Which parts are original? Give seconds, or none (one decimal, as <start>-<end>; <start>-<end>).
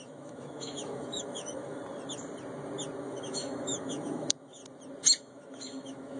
1.8-3.0; 4.6-5.2